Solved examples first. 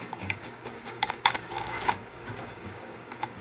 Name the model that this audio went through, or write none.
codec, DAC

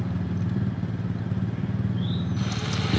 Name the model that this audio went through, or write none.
none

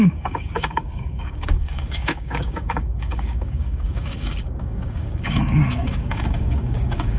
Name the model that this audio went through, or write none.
codec, DAC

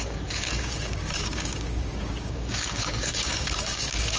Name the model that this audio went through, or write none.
codec, DAC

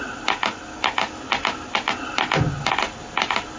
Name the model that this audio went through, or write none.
none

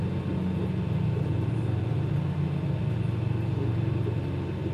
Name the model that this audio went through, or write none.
none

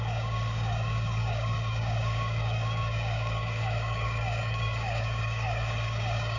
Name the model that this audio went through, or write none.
codec, DAC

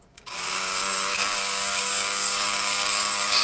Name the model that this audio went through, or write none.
codec, DAC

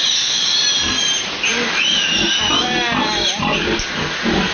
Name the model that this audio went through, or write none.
none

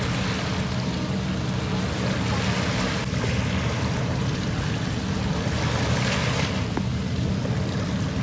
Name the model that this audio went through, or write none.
none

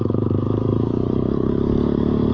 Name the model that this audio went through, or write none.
codec, DAC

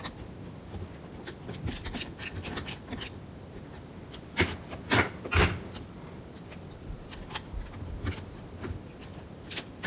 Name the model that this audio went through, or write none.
none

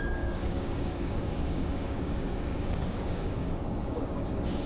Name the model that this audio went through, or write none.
codec, DAC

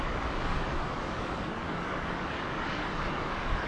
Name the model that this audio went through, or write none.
codec, DAC